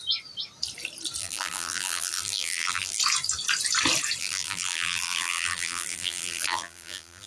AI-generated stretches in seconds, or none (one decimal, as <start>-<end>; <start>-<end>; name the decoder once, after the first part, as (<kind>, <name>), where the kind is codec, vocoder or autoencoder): 1.2-3.0 (vocoder, BigVGAN v2); 4.2-7.3